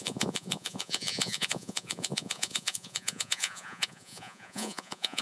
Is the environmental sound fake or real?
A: fake